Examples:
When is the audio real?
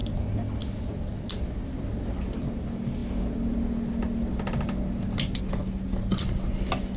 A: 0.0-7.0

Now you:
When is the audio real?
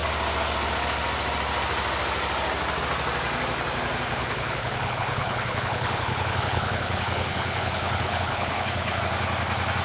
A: 0.0-4.2; 9.0-9.8